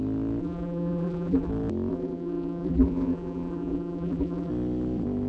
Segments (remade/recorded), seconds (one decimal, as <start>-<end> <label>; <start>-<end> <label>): 0.0-0.4 recorded; 0.4-1.5 remade; 1.5-1.9 recorded; 1.9-4.5 remade; 4.5-5.3 recorded